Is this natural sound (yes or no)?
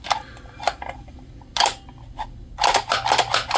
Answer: yes